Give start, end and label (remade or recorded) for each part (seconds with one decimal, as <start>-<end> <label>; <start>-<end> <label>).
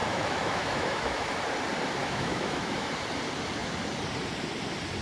0.0-1.3 remade; 1.3-2.0 recorded; 2.0-2.9 remade; 2.9-5.0 recorded